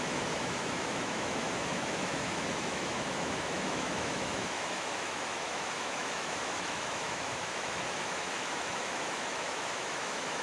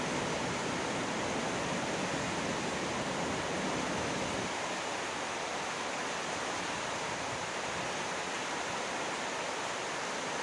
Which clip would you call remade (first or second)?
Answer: first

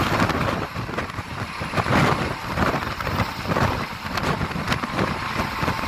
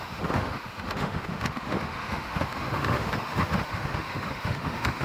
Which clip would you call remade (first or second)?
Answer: second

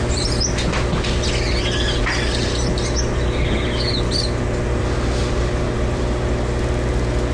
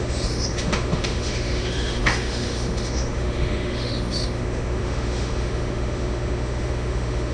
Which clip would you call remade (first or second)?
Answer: second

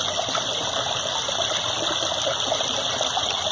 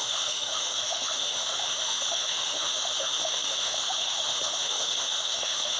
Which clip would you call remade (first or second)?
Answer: second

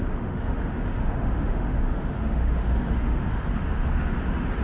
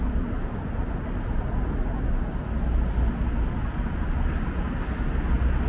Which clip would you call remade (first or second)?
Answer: first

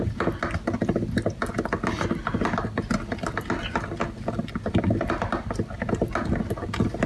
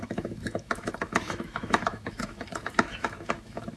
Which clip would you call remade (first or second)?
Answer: second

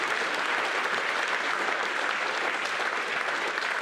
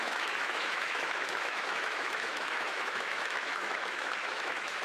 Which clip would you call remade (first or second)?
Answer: second